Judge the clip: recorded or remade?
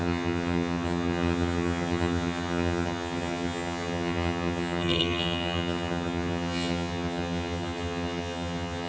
remade